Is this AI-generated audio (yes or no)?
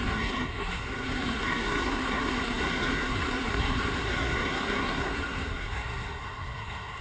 yes